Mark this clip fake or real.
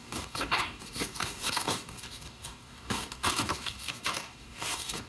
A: fake